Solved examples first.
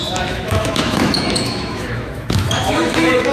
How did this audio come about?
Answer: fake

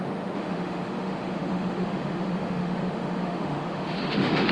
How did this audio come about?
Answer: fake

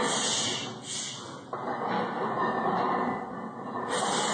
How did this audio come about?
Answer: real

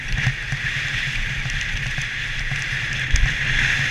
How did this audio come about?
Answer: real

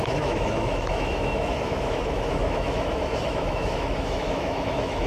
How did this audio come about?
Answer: fake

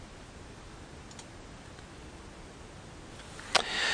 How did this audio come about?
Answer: real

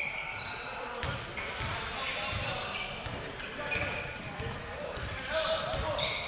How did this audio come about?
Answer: real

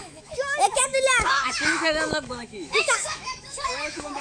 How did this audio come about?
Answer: fake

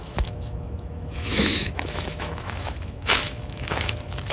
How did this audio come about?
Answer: fake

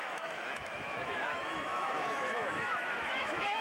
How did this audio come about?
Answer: fake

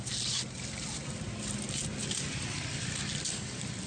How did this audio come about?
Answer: real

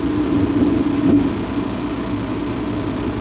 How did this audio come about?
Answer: real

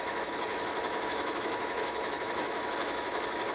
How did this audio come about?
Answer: fake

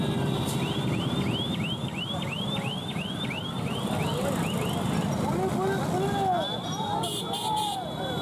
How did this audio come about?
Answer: real